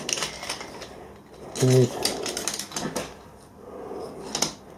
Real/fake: real